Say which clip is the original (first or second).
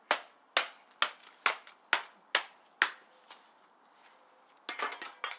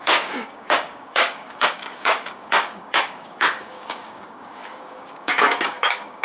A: first